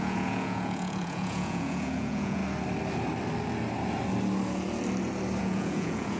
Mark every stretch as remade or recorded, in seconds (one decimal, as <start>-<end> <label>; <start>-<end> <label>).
0.0-2.4 remade; 2.4-5.4 recorded; 5.4-6.2 remade